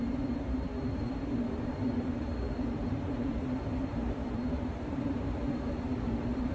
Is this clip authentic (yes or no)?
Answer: no